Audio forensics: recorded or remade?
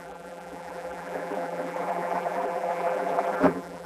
remade